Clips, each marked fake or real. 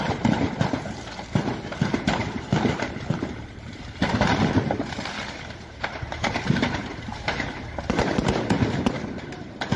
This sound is fake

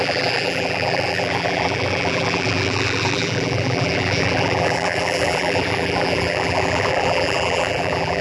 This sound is fake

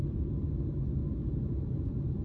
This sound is real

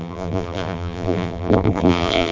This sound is fake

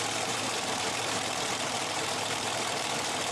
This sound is fake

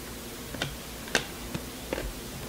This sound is fake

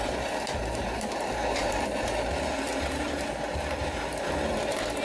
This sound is fake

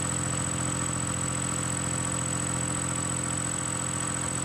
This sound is real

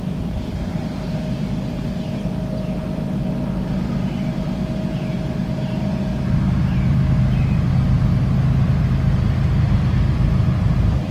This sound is real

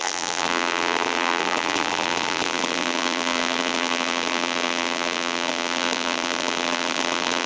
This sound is fake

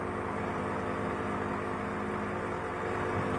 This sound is real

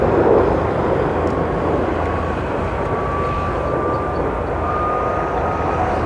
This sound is real